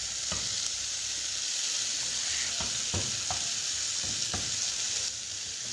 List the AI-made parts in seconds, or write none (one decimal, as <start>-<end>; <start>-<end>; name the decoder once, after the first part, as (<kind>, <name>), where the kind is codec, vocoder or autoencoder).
none